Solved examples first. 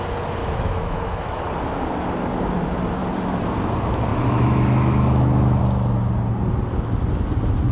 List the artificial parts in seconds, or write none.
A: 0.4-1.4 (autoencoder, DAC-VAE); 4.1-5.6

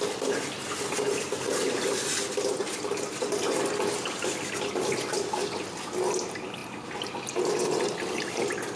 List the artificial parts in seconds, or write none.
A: none

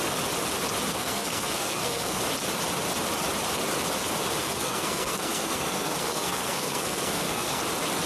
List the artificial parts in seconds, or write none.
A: 0.9-2.2 (codec, SNAC); 4.4-7.6

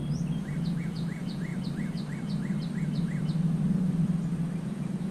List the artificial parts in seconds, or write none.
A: 0.8-1.5 (vocoder, Vocos); 4.6-5.1

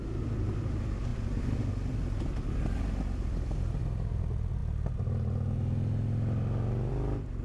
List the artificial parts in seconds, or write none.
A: none

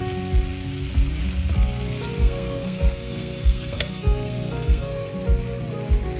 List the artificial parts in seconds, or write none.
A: 2.2-5.1 (codec, SNAC)

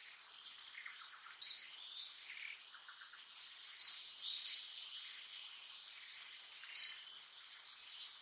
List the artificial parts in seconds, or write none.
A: none